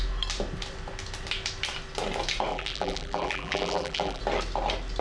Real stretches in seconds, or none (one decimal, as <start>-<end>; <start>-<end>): 0.0-2.5; 4.2-5.0